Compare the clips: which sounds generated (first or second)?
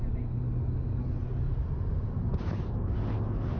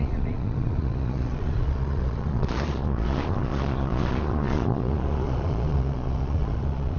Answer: second